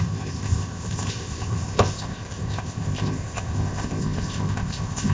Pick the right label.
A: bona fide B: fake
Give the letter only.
B